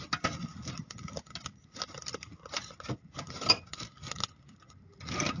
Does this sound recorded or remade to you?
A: recorded